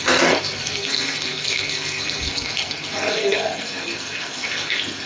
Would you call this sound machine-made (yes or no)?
yes